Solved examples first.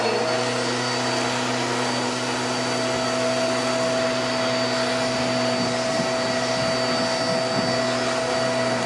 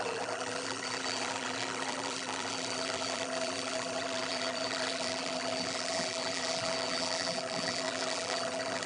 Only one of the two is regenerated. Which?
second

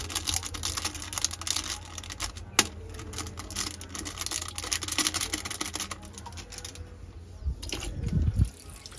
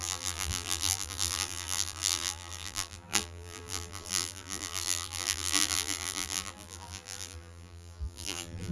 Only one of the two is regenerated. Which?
second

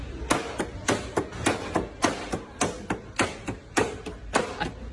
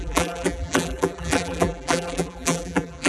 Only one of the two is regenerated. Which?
second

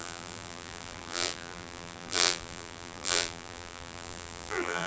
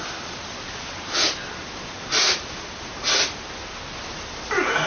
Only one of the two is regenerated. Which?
first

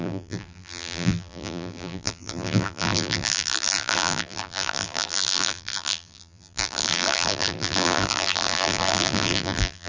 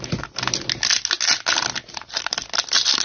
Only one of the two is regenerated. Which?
first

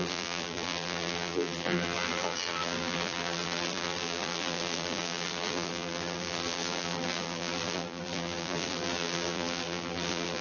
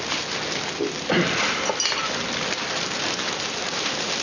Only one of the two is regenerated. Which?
first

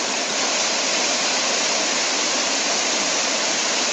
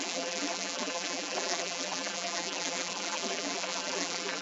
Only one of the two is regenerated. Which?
second